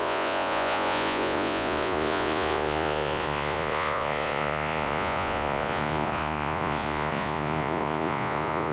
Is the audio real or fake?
fake